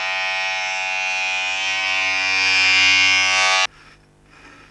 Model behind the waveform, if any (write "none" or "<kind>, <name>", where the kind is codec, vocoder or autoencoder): none